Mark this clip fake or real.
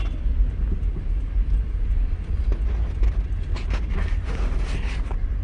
real